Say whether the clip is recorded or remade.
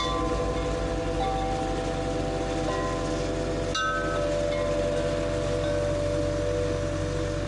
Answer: recorded